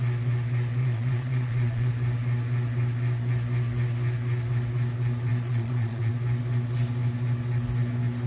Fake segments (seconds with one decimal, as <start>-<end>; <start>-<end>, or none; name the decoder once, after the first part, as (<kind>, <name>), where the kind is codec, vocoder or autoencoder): 0.8-1.9 (vocoder, Vocos); 5.3-6.1